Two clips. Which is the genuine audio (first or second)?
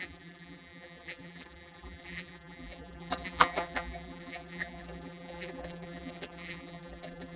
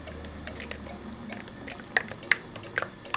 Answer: second